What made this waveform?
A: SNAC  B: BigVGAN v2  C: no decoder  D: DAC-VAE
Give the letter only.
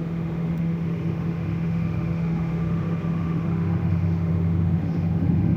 D